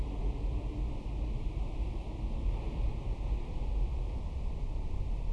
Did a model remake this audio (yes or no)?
no